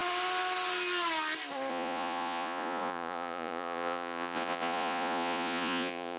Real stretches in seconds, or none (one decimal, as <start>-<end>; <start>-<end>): 0.0-1.7